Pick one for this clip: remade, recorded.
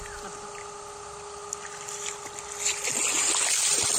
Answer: recorded